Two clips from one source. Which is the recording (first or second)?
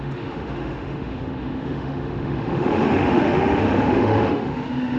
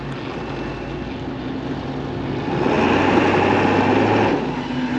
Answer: second